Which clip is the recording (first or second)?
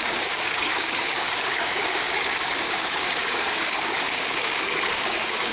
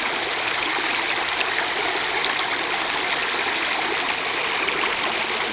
second